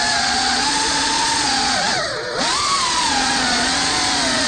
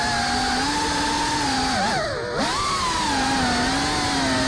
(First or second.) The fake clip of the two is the first